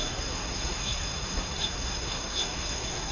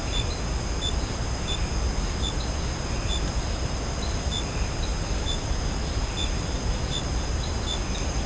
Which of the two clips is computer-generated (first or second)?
first